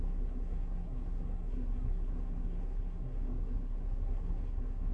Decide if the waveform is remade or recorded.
remade